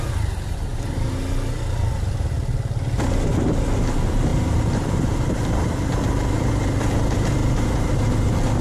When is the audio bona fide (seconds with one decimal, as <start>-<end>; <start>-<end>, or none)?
0.0-4.3; 5.2-7.4; 7.9-8.6